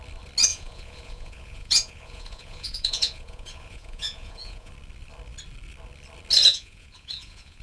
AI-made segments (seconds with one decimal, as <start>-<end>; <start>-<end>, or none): 0.5-4.7; 6.5-7.6